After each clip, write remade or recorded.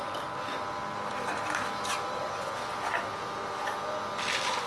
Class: recorded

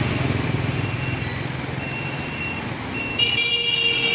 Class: recorded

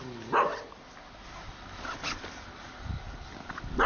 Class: recorded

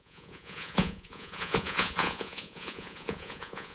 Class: remade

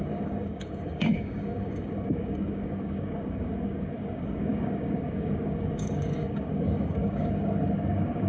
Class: remade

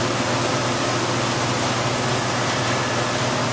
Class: recorded